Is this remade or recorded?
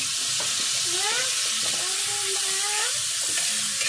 recorded